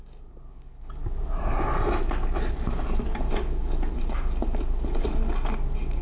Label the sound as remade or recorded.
recorded